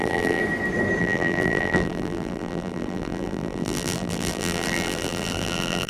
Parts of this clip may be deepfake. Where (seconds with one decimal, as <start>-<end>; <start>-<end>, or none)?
0.0-0.4; 1.0-5.9